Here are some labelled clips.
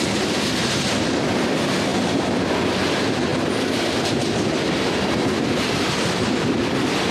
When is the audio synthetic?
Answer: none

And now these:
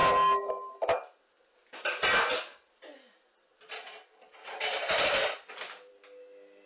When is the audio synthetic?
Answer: none

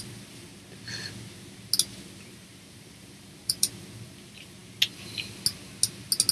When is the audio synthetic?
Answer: 0.0-0.5 (vocoder, BigVGAN v2); 2.3-4.6

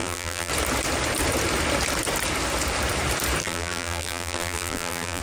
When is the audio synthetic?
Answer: 0.0-0.5 (vocoder, BigVGAN v2); 3.4-5.2

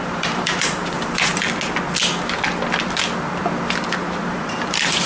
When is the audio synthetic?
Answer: 0.0-1.3 (vocoder, BigVGAN v2); 4.3-5.1